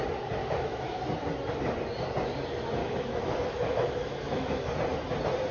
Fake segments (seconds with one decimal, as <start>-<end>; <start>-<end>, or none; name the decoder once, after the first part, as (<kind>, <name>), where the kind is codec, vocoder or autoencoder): 0.4-1.0 (autoencoder, DAC-VAE); 2.8-4.7